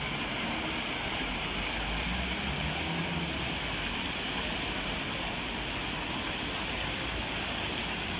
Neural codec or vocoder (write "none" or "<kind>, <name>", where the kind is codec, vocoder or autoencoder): none